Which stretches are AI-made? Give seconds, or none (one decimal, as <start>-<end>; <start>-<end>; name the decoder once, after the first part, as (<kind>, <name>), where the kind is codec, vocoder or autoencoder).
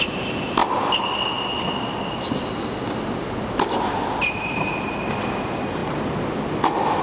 none